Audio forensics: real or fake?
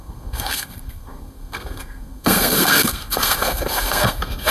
fake